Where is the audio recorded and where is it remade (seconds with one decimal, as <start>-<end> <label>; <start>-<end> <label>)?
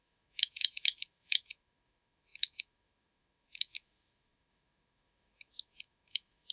0.0-6.5 remade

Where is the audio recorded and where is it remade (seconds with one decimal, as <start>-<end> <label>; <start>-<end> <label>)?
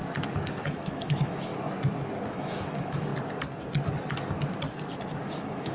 0.0-0.6 recorded; 0.6-1.5 remade; 1.5-2.3 recorded; 2.3-3.1 remade; 3.1-5.2 recorded; 5.2-5.7 remade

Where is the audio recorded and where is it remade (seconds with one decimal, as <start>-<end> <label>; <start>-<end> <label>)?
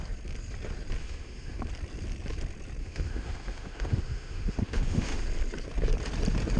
0.0-1.0 recorded; 1.0-1.6 remade; 1.6-2.8 recorded; 2.8-5.2 remade; 5.2-6.6 recorded